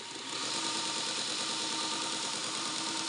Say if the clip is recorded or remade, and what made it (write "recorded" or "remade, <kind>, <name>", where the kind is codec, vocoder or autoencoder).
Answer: remade, vocoder, BigVGAN v2